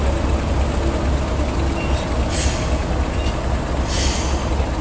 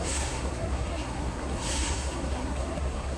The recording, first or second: first